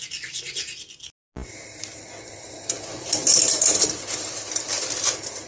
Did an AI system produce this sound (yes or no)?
no